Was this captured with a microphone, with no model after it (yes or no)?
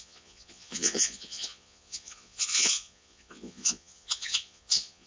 no